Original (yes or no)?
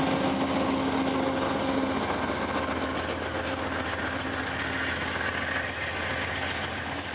yes